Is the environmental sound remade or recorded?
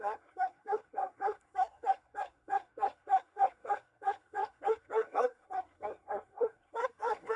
remade